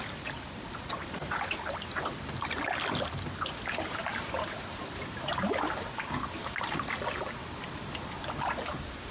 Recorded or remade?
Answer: recorded